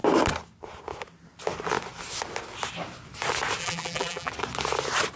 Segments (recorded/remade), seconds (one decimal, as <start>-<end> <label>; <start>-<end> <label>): 0.0-3.6 recorded; 3.6-4.3 remade; 4.3-5.2 recorded